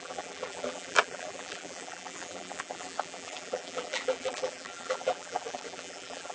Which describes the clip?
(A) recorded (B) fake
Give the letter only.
B